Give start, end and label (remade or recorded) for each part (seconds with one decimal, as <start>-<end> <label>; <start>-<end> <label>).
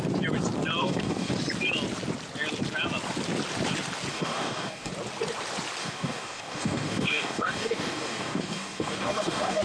0.0-0.8 recorded; 0.8-1.3 remade; 1.3-4.1 recorded; 4.1-4.9 remade; 4.9-5.8 recorded; 5.8-9.6 remade